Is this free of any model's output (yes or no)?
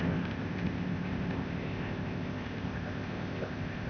no